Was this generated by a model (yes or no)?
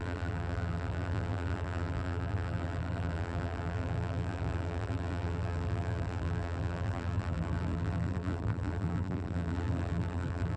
yes